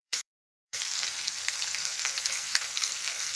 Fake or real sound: fake